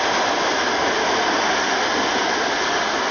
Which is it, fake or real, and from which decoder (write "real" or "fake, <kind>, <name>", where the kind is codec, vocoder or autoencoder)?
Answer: real